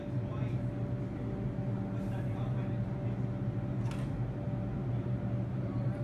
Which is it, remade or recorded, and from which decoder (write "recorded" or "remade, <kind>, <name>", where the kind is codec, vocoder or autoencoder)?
recorded